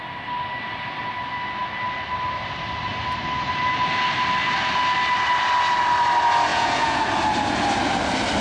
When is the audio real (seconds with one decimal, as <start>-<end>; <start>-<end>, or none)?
0.0-6.5; 7.0-8.4